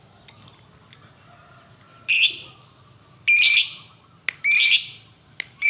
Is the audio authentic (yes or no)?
yes